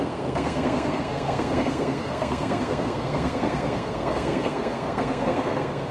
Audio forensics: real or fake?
fake